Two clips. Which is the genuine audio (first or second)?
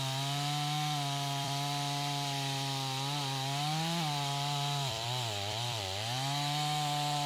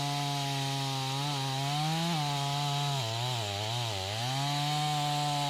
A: second